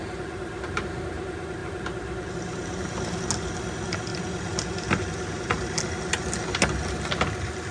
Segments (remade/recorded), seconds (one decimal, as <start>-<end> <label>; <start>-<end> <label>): 0.0-1.6 recorded; 1.6-2.3 remade; 2.3-4.1 recorded; 4.1-5.4 remade; 5.4-7.7 recorded